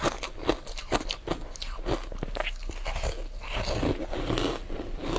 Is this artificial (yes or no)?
no